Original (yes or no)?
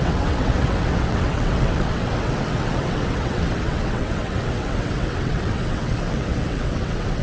no